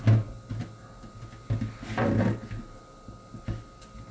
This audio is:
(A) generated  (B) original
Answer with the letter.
B